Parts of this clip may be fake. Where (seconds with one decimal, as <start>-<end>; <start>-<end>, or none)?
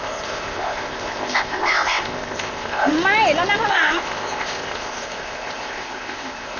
0.0-2.9; 3.7-6.6